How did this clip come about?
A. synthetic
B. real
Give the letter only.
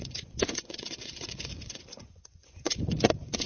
A